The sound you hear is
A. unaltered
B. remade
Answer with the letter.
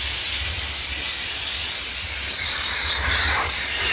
A